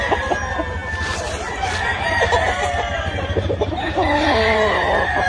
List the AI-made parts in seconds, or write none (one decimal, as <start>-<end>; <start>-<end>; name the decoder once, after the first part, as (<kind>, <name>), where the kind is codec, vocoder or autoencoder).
1.9-5.3 (vocoder, BigVGAN v2)